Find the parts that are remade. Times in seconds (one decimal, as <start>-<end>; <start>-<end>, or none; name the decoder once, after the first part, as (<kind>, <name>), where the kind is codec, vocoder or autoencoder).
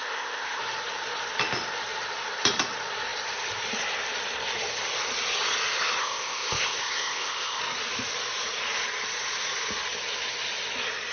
0.0-0.6 (codec, ZipCodec); 6.0-7.6